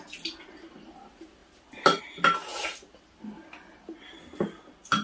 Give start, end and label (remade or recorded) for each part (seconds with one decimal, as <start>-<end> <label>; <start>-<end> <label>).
0.0-5.0 recorded

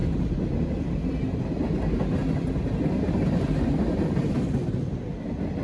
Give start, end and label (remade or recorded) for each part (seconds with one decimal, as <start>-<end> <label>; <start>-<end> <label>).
0.0-5.6 recorded

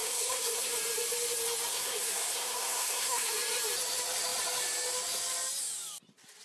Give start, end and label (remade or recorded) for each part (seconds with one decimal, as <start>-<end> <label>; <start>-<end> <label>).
0.0-0.7 remade; 0.7-1.7 recorded; 1.7-3.3 remade; 3.3-6.4 recorded

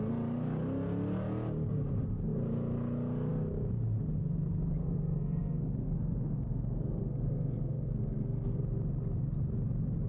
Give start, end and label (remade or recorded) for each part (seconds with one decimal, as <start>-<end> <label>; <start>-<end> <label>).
0.0-4.8 recorded; 4.8-8.6 remade; 8.6-10.1 recorded